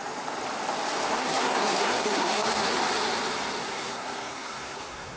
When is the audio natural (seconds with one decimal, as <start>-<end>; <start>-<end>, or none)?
0.0-1.2; 2.8-3.6